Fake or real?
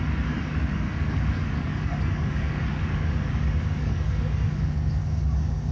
fake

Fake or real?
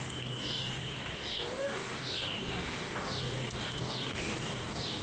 fake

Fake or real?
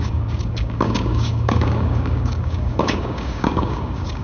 fake